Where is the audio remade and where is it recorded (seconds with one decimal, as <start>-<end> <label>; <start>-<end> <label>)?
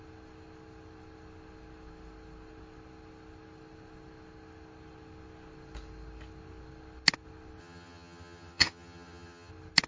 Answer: 0.0-7.6 recorded; 7.6-9.5 remade; 9.5-9.9 recorded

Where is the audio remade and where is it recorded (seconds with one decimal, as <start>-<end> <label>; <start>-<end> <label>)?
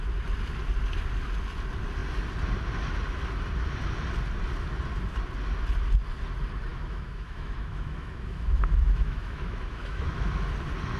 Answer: 0.0-6.7 recorded; 6.7-10.3 remade; 10.3-11.0 recorded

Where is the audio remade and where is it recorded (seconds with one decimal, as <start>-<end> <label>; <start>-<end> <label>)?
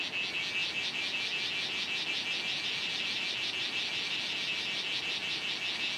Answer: 0.0-6.0 recorded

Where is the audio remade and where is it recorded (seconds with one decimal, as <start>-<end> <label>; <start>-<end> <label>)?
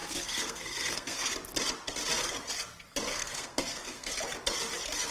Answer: 0.0-1.3 remade; 1.3-3.1 recorded; 3.1-4.1 remade; 4.1-5.1 recorded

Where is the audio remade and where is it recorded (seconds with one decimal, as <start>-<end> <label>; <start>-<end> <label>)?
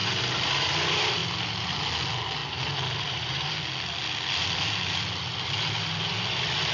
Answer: 0.0-6.7 recorded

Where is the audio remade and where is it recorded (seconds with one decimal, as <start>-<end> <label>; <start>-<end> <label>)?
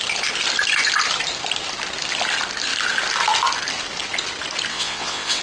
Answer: 0.0-4.7 recorded; 4.7-5.4 remade